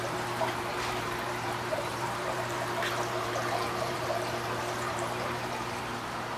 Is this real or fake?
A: fake